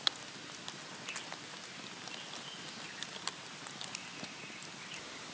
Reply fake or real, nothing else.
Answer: real